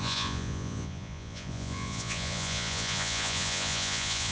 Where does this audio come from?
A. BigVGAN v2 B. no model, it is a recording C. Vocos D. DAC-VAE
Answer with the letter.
C